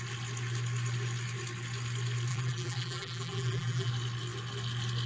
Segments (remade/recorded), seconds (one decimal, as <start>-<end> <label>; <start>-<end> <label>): 0.0-2.3 recorded; 2.3-3.9 remade; 3.9-5.1 recorded